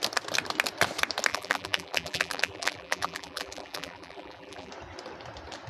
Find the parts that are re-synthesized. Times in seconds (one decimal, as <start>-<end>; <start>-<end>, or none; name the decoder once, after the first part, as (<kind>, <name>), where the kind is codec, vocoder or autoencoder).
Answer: 1.3-4.7 (vocoder, BigVGAN v2)